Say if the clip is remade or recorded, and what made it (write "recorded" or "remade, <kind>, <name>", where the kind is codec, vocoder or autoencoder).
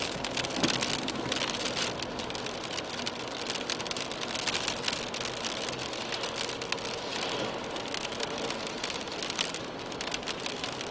recorded